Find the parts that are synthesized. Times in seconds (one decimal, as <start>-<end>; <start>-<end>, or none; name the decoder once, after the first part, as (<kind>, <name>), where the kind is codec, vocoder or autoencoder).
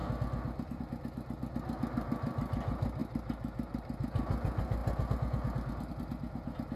none